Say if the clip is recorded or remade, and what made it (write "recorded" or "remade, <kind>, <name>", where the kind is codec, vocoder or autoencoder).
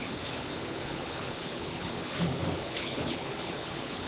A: remade, codec, HILCodec